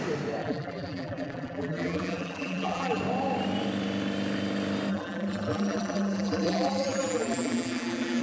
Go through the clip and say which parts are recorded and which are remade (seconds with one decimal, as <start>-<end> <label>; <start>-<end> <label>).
0.0-0.4 recorded; 0.4-3.0 remade; 3.0-4.9 recorded; 4.9-8.2 remade